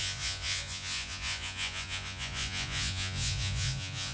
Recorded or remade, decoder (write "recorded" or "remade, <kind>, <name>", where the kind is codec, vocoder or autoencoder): remade, vocoder, Vocos